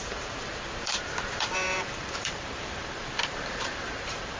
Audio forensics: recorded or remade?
remade